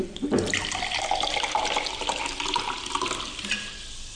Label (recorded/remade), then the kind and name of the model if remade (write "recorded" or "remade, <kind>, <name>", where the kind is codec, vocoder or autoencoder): recorded